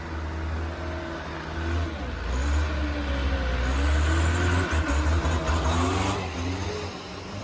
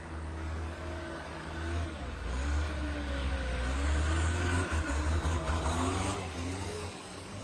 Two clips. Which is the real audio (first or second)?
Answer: first